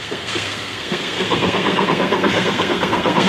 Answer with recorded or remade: remade